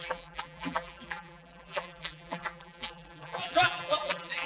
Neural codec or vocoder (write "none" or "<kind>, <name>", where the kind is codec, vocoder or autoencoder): vocoder, BigVGAN v2